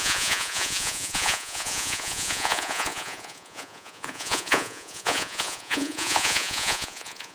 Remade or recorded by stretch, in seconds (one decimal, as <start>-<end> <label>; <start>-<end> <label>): 0.0-7.3 remade